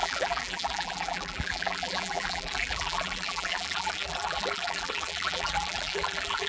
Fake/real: fake